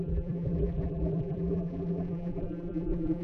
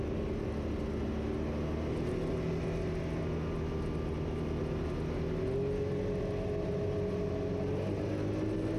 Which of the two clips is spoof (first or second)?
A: first